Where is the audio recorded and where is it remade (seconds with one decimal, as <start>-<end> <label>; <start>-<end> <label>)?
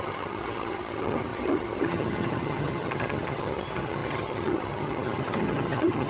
0.0-6.1 remade